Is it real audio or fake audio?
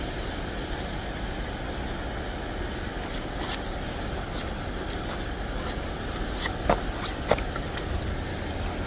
real